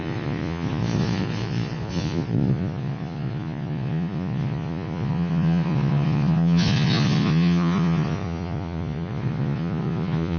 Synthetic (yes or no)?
yes